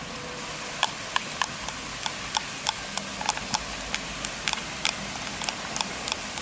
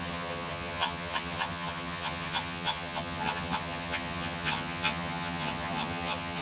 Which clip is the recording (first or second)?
first